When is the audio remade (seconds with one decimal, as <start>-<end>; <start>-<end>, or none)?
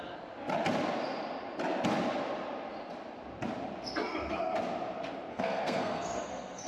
5.3-6.7